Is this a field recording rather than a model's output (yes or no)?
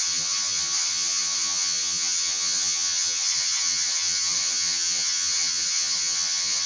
no